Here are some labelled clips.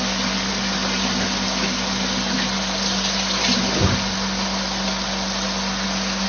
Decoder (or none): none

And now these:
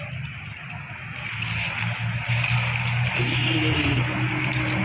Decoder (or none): none